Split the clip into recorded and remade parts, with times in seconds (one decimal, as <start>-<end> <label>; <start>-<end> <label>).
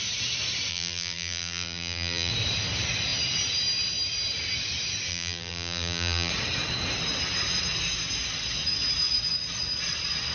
0.0-0.7 recorded; 0.7-2.3 remade; 2.3-5.1 recorded; 5.1-6.3 remade; 6.3-10.3 recorded